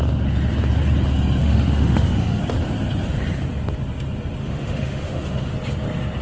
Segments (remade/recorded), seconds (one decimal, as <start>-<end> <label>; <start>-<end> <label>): 0.0-1.4 recorded; 1.4-2.4 remade; 2.4-4.4 recorded; 4.4-5.5 remade; 5.5-6.2 recorded